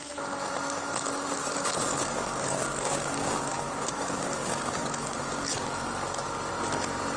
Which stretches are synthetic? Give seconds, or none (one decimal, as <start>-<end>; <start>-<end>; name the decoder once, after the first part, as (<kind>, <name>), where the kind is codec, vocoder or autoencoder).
1.4-5.7 (codec, DAC)